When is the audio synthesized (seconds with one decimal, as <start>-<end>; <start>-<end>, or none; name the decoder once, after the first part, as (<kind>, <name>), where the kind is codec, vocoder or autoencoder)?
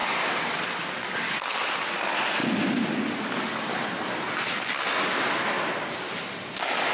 none